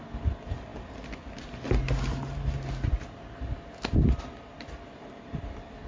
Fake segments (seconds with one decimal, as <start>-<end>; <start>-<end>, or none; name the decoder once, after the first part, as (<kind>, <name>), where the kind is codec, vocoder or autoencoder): none